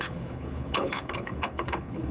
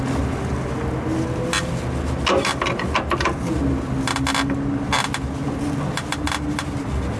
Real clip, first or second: second